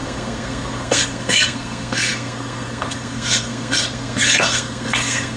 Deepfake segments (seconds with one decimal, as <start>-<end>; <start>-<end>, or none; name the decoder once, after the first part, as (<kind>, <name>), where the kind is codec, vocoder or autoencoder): 0.0-5.4 (codec, SNAC)